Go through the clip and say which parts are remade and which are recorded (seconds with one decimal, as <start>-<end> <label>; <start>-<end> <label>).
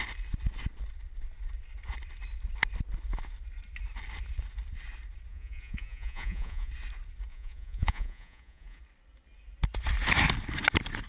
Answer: 0.0-5.3 recorded; 5.3-6.7 remade; 6.7-7.3 recorded; 7.3-8.8 remade; 8.8-11.1 recorded